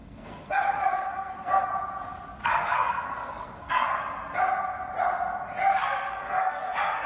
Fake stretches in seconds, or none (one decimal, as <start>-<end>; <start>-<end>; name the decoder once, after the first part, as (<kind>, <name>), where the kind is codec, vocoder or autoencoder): 0.0-1.7 (codec, SNAC); 2.4-4.0; 5.7-7.1